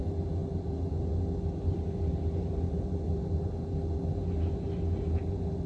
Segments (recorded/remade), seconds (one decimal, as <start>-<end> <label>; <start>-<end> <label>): 0.0-5.7 recorded